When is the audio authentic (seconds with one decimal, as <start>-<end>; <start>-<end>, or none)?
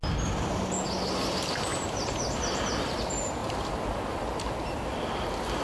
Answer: 0.0-1.7; 2.7-3.4; 5.0-5.6